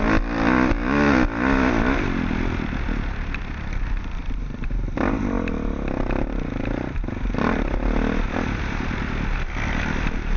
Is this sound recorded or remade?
recorded